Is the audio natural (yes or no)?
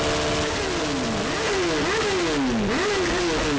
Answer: yes